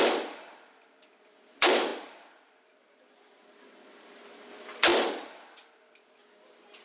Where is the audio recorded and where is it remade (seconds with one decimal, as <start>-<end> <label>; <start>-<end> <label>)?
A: 0.0-6.8 remade